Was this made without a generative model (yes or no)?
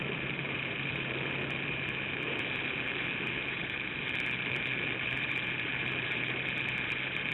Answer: no